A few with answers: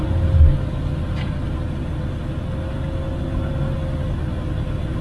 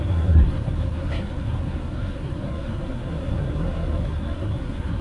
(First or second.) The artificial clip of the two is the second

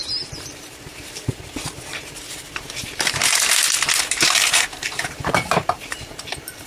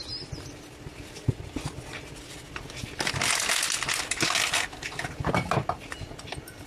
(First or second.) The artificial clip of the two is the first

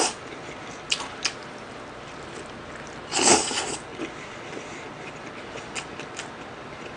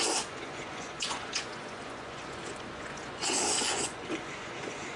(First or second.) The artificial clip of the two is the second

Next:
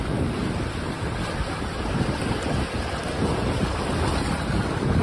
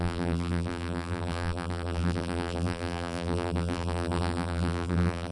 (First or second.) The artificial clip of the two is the second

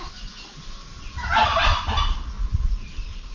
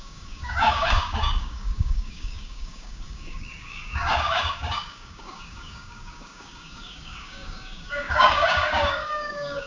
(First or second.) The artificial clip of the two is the second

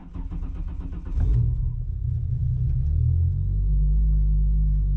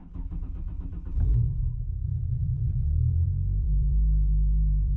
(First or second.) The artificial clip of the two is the second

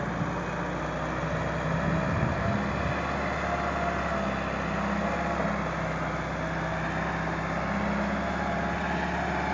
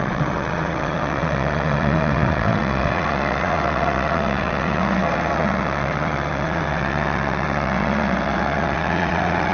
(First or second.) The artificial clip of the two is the second